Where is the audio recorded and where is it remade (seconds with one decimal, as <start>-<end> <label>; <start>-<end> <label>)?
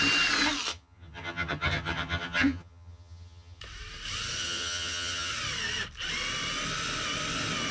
0.0-0.7 recorded; 0.7-3.6 remade; 3.6-4.4 recorded; 4.4-5.3 remade; 5.3-7.7 recorded